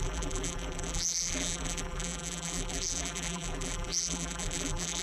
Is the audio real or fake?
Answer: fake